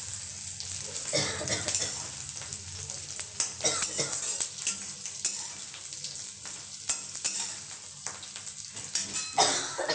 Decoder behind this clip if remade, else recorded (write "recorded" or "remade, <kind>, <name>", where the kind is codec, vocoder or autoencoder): recorded